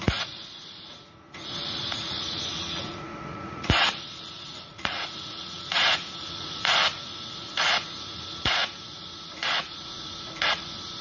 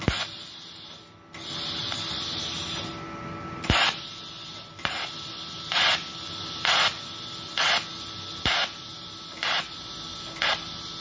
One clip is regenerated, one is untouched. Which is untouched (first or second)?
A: second